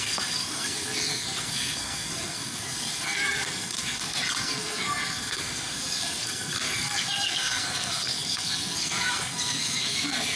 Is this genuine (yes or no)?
no